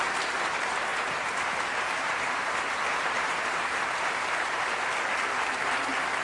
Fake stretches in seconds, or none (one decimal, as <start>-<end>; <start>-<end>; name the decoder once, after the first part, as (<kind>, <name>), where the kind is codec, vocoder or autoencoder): 0.9-4.6 (vocoder, BigVGAN v2)